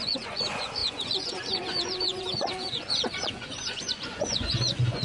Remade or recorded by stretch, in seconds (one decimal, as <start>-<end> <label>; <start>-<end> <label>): 0.0-5.0 remade